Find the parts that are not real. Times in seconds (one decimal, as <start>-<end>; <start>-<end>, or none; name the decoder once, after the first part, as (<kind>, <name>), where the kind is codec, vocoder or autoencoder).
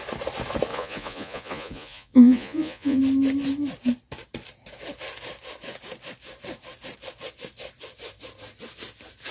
0.7-3.0 (vocoder, Vocos)